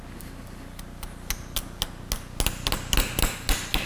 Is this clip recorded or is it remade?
recorded